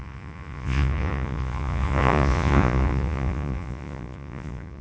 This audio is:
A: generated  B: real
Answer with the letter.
A